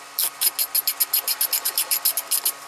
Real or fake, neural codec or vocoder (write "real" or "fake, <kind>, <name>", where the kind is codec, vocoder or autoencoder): real